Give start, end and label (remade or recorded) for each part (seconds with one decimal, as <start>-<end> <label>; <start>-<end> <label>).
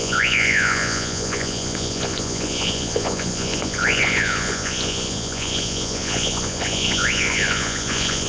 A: 0.0-8.3 remade